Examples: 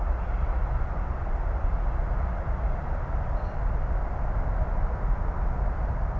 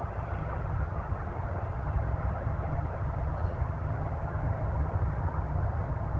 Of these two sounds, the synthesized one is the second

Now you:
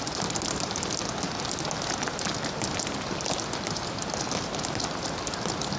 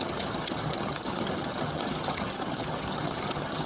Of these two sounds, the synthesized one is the second